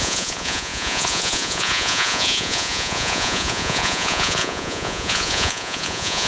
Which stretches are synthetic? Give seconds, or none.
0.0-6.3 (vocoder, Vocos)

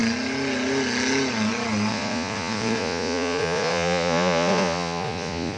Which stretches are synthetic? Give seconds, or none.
1.9-5.6 (vocoder, Vocos)

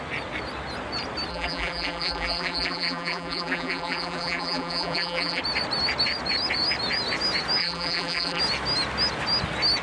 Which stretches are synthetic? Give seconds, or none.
1.3-5.4 (vocoder, BigVGAN v2); 7.6-8.4

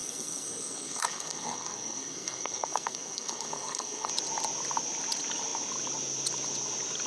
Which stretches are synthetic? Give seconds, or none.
0.0-4.1 (codec, SNAC)

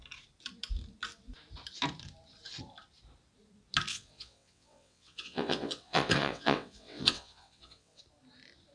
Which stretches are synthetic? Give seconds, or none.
3.9-8.0 (vocoder, WaveNeXt)